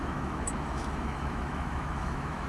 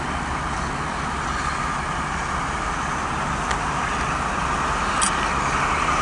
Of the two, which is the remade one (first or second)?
first